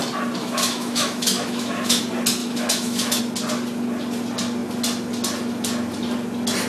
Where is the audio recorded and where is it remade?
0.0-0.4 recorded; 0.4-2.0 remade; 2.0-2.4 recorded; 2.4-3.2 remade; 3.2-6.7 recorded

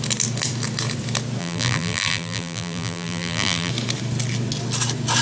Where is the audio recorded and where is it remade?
0.0-1.4 recorded; 1.4-3.7 remade; 3.7-5.2 recorded

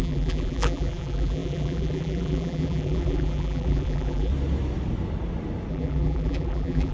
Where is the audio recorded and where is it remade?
0.0-4.3 remade; 4.3-5.7 recorded; 5.7-6.9 remade

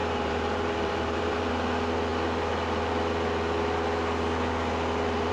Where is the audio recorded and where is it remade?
0.0-1.5 remade; 1.5-5.3 recorded

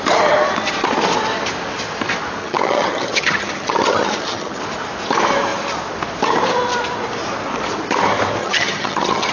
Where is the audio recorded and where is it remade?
0.0-2.4 recorded; 2.4-4.6 remade; 4.6-8.4 recorded; 8.4-9.3 remade

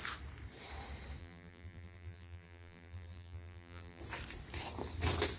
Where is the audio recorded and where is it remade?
0.0-1.2 recorded; 1.2-4.0 remade; 4.0-5.4 recorded

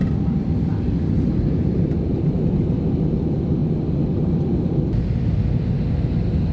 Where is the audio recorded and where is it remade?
0.0-6.5 recorded

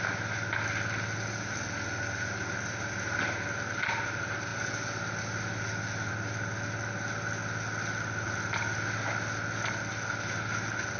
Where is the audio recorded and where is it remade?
0.0-11.0 recorded